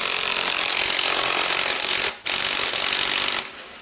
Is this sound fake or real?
real